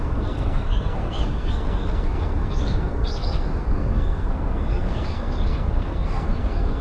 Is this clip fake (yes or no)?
yes